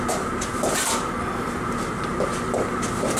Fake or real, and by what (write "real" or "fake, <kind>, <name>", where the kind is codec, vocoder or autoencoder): real